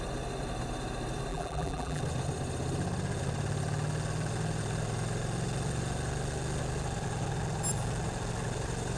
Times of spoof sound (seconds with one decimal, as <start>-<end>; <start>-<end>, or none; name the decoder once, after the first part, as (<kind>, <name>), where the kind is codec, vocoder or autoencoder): 1.3-2.0 (vocoder, BigVGAN v2)